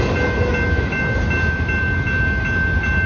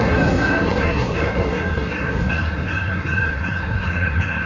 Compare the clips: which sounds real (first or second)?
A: first